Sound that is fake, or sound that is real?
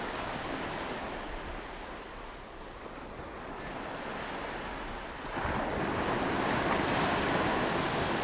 real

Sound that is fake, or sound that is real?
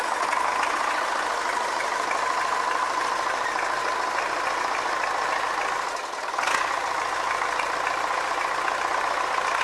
real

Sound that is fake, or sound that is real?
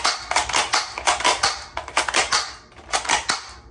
real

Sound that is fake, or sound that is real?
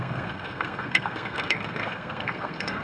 fake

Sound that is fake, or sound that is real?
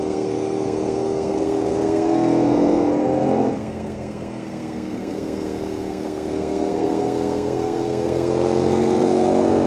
fake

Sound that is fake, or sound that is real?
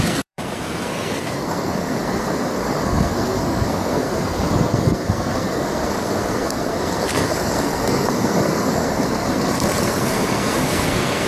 fake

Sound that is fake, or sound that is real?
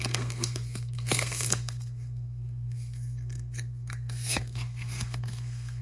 fake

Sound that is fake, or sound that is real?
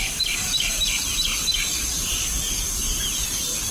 real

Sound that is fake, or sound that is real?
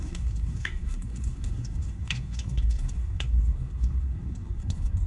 fake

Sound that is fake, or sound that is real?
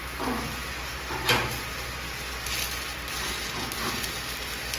real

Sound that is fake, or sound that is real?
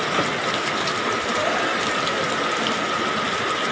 real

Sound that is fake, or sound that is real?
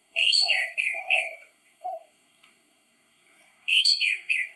fake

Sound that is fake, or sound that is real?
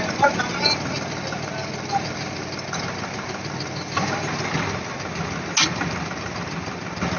real